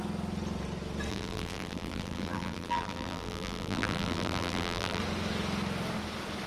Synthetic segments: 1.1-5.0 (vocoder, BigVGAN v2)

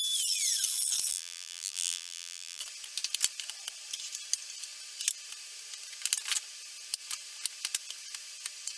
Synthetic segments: 1.1-2.6 (vocoder, BigVGAN v2)

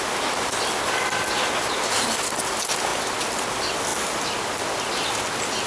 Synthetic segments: 2.9-3.5 (vocoder, BigVGAN v2)

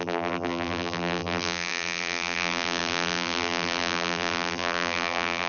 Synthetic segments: 0.0-5.5 (vocoder, BigVGAN v2)

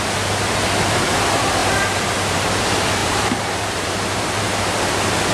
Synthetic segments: 1.6-2.6 (vocoder, BigVGAN v2); 3.0-4.4

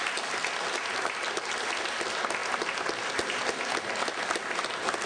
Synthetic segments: none

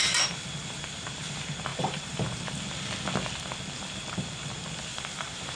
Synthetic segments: 1.7-2.5 (vocoder, BigVGAN v2); 4.9-5.6